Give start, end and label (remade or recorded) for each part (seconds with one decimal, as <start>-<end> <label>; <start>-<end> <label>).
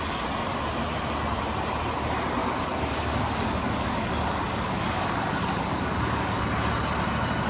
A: 0.0-2.4 recorded; 2.4-6.4 remade; 6.4-7.5 recorded